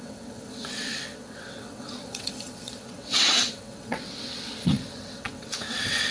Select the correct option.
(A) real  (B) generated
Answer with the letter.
B